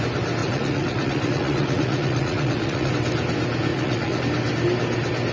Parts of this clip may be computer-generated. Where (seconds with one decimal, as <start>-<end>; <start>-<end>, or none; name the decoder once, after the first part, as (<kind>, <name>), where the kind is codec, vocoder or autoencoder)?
0.4-2.9 (vocoder, Vocos); 3.7-4.2

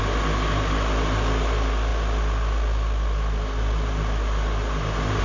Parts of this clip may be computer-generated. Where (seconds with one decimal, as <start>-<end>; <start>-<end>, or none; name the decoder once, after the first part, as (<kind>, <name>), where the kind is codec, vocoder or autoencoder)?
none